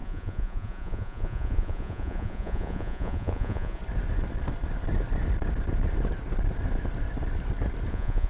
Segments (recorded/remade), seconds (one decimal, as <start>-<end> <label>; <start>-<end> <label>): 0.0-3.8 remade; 3.8-7.9 recorded; 7.9-8.3 remade